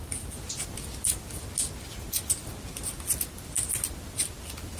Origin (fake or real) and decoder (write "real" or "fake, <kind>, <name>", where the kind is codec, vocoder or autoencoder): real